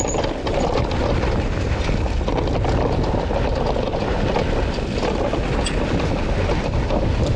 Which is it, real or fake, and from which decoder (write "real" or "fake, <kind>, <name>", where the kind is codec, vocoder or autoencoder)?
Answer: real